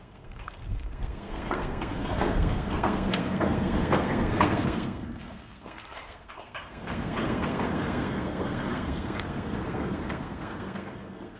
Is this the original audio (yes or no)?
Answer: no